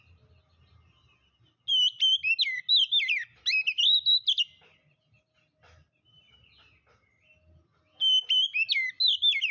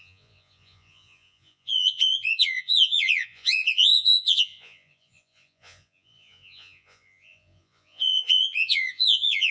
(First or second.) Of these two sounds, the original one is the first